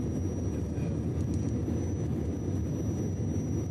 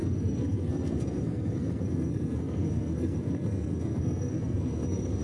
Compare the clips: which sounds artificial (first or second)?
second